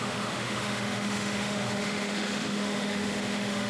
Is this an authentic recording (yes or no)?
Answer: no